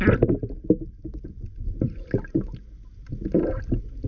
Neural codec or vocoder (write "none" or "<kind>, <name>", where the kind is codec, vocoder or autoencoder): none